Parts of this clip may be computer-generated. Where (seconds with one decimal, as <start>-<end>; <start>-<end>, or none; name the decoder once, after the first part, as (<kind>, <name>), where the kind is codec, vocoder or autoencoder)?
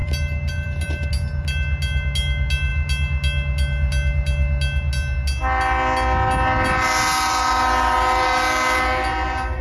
0.0-1.1 (vocoder, BigVGAN v2)